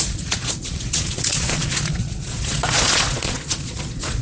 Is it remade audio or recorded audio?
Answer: remade